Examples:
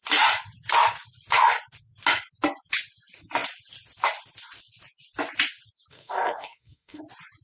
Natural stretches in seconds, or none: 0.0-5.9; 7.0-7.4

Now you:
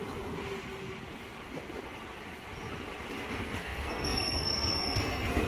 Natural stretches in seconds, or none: 0.0-3.3